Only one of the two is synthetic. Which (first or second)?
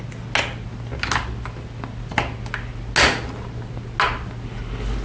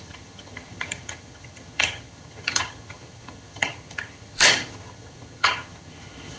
second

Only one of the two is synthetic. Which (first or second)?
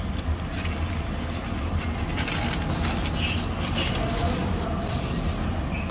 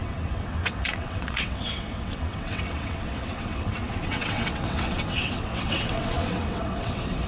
second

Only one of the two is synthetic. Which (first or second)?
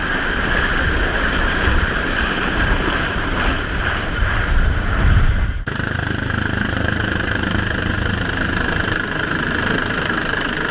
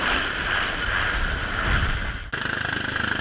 first